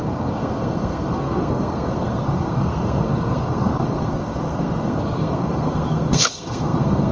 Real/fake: fake